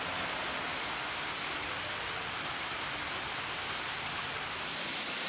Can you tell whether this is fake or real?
real